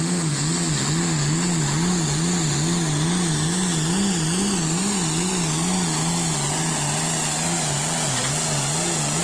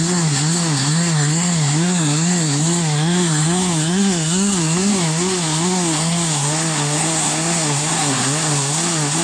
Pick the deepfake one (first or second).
second